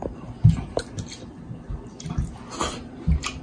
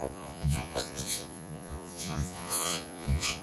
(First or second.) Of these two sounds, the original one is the first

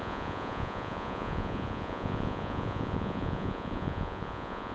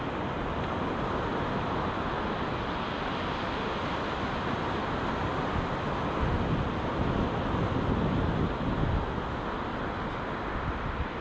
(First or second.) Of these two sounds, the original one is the second